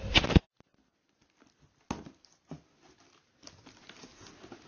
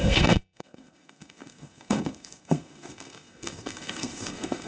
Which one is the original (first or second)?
first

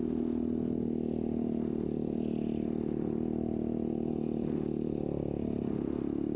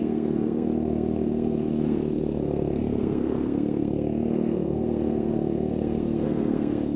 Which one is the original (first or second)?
first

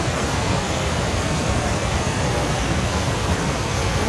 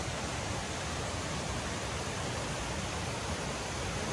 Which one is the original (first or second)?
second